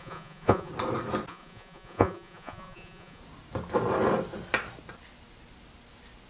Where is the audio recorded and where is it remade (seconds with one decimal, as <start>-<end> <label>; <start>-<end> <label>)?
0.0-0.7 remade; 0.7-1.3 recorded; 1.3-3.2 remade; 3.2-6.3 recorded